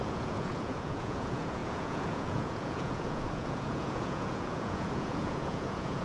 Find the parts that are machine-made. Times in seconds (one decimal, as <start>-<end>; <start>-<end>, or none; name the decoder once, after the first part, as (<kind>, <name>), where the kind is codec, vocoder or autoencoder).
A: 0.0-6.0 (vocoder, Vocos)